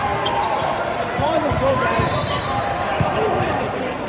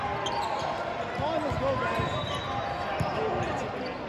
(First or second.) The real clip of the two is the second